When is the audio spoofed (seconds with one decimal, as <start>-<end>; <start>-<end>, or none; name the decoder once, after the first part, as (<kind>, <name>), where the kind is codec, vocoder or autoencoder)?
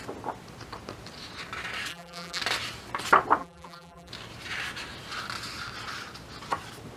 1.9-2.4 (vocoder, BigVGAN v2); 3.4-4.1